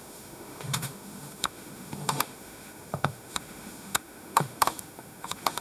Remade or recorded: remade